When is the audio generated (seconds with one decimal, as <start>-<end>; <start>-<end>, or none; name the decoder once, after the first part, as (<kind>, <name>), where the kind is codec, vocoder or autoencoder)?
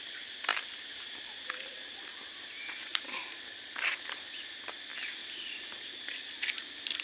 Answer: 0.5-1.2 (vocoder, BigVGAN v2); 2.9-4.5; 5.2-7.0